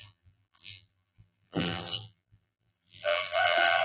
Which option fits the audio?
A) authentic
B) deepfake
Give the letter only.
B